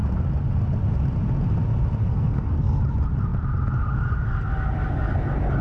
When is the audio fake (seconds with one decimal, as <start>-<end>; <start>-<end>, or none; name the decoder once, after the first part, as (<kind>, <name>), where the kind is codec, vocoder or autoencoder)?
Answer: 2.0-2.8 (codec, SNAC)